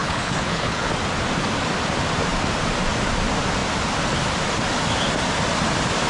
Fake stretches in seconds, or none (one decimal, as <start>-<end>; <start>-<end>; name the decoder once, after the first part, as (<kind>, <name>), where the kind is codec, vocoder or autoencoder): 0.0-0.9 (codec, HILCodec)